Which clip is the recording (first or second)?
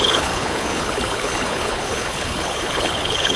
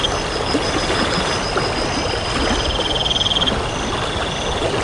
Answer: second